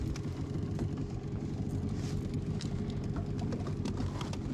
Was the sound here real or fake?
real